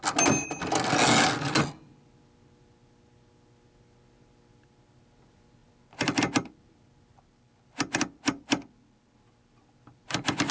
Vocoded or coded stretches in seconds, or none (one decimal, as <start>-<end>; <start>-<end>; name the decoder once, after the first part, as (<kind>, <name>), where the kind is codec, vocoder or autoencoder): none